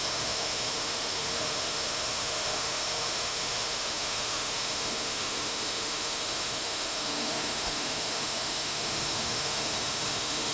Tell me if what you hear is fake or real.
fake